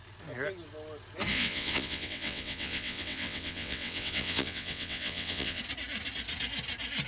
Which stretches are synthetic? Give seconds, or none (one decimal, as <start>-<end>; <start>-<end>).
1.3-5.6